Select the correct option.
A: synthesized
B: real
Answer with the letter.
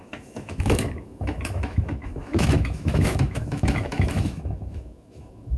A